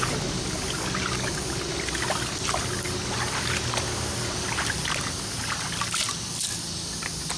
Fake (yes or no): no